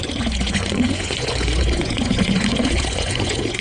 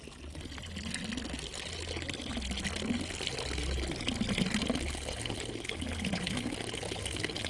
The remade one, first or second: first